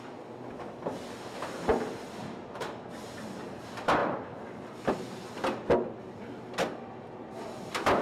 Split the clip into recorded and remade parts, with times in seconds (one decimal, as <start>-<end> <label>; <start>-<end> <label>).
0.0-2.2 recorded; 2.2-2.9 remade; 2.9-8.0 recorded